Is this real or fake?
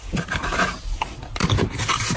real